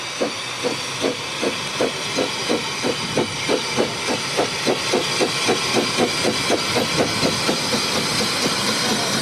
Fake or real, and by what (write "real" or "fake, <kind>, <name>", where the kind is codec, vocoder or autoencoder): real